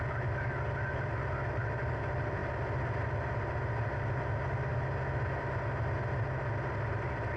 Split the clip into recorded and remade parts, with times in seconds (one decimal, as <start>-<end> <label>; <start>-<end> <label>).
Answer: 0.0-4.7 remade; 4.7-6.9 recorded; 6.9-7.4 remade